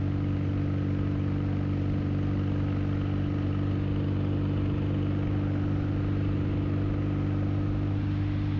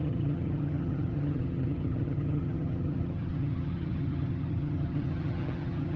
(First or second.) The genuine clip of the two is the first